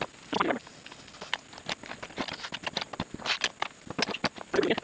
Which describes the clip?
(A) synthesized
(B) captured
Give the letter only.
B